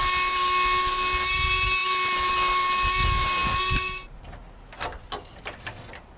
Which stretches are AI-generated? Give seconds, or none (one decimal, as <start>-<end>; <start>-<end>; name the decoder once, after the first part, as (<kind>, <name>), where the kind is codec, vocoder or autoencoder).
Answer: none